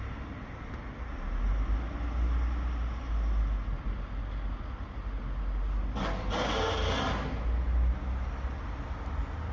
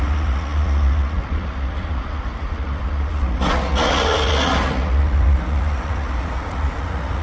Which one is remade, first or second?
second